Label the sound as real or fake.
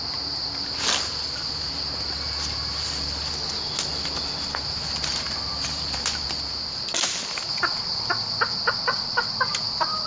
real